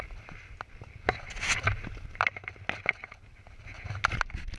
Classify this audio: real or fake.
real